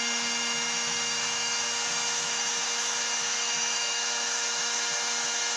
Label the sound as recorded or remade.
remade